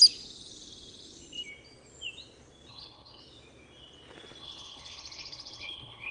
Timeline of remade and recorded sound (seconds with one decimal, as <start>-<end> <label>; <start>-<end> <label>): 0.0-2.7 recorded; 2.7-3.2 remade; 3.2-4.4 recorded; 4.4-6.1 remade